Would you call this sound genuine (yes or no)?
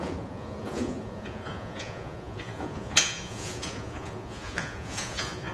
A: no